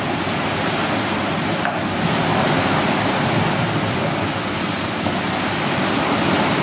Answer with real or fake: real